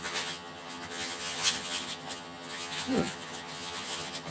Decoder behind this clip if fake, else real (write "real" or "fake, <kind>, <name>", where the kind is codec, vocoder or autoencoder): fake, vocoder, HiFi-GAN